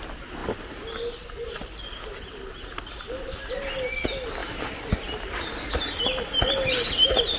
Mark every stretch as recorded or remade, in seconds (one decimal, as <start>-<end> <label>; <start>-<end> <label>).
0.0-4.4 recorded; 4.4-4.9 remade; 4.9-6.6 recorded; 6.6-7.4 remade